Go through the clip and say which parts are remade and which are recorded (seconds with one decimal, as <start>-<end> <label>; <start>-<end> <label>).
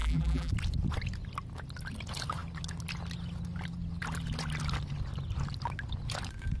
0.0-0.5 remade; 0.5-6.6 recorded